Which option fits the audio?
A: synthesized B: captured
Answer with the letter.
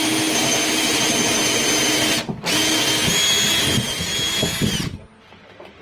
B